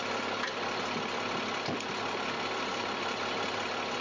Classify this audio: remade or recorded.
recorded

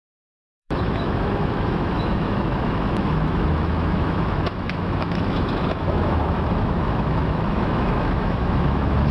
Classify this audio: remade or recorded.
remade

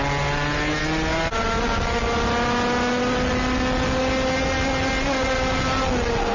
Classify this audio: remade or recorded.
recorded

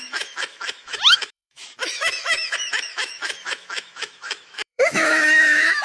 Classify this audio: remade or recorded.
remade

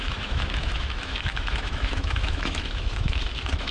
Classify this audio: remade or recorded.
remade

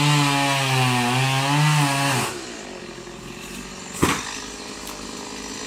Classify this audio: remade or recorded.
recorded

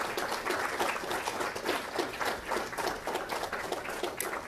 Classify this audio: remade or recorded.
recorded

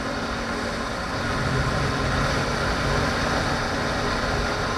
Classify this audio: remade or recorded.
recorded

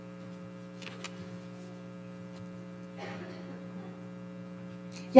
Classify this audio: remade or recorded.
recorded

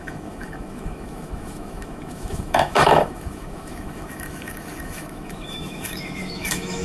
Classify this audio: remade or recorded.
remade